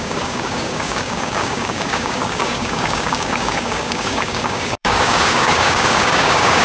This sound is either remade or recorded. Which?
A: remade